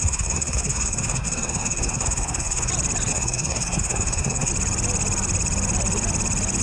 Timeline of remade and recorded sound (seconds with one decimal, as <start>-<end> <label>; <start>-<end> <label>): 0.0-2.7 remade; 2.7-3.1 recorded; 3.1-4.5 remade; 4.5-6.6 recorded